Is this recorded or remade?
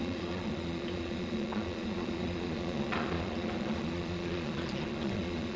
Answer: remade